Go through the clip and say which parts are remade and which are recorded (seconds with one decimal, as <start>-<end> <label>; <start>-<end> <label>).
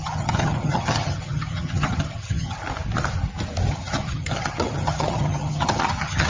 0.0-2.6 remade; 2.6-3.7 recorded; 3.7-6.3 remade